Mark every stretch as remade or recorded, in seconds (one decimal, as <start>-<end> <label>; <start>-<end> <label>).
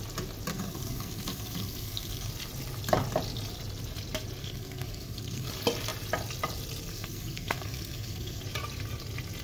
0.0-0.5 recorded; 0.5-2.3 remade; 2.3-4.4 recorded; 4.4-5.5 remade; 5.5-6.9 recorded; 6.9-8.4 remade; 8.4-9.4 recorded